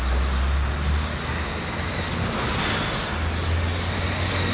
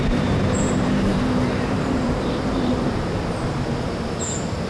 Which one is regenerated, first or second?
second